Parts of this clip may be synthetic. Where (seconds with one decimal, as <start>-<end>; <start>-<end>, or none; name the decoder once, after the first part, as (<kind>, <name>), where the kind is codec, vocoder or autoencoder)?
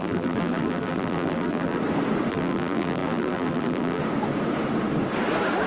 0.0-1.8 (vocoder, BigVGAN v2); 2.3-4.0